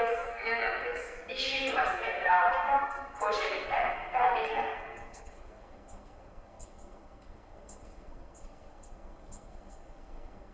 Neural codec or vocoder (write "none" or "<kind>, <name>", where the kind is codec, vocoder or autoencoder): codec, SNAC